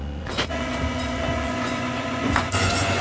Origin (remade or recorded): remade